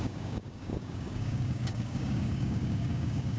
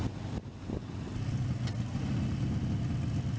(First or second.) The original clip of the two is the second